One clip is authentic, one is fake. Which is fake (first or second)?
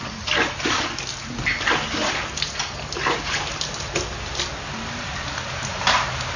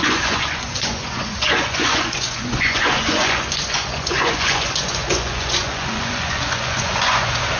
second